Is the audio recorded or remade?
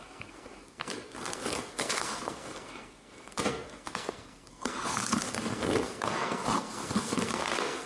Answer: remade